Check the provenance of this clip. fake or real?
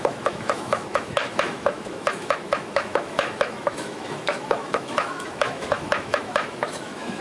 fake